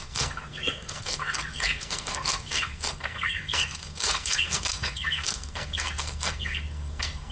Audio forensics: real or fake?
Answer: fake